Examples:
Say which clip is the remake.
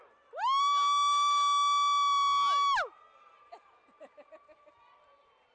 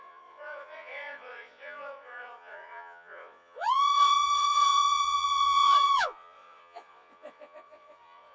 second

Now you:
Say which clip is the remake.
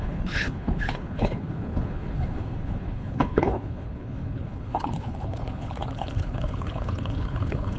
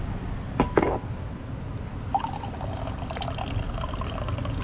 first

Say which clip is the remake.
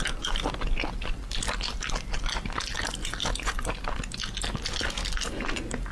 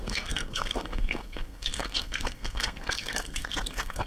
second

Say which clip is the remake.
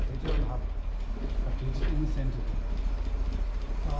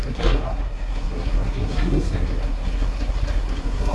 second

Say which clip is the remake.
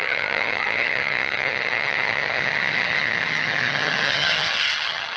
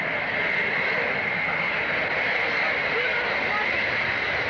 first